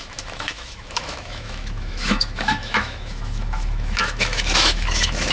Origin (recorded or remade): remade